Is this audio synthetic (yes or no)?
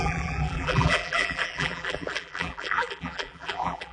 yes